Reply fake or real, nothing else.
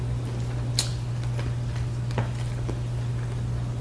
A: real